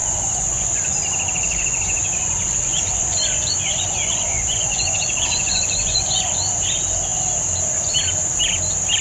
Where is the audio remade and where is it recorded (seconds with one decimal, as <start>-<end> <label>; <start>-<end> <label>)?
0.0-0.9 remade; 0.9-1.4 recorded; 1.4-6.5 remade; 6.5-9.0 recorded